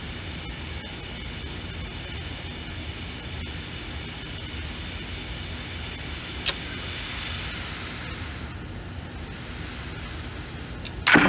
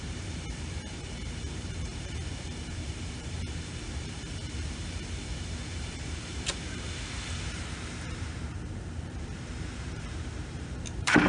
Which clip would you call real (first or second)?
first